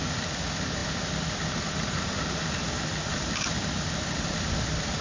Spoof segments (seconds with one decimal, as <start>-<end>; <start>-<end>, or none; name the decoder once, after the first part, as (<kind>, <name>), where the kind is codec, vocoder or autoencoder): none